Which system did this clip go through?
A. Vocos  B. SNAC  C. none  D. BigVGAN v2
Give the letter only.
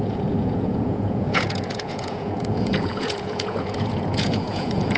A